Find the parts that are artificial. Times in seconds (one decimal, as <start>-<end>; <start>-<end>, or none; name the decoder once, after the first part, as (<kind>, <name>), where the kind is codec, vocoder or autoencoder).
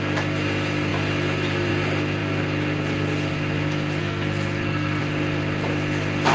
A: 4.0-5.0 (codec, SNAC)